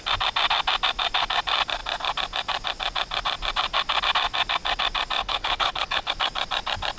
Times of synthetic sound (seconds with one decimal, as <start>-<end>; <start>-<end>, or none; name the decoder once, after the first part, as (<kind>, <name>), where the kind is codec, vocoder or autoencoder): 5.2-6.1 (codec, HILCodec)